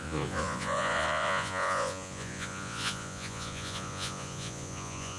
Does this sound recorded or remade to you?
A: remade